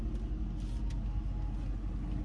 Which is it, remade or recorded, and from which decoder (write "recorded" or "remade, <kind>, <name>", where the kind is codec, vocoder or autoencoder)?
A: recorded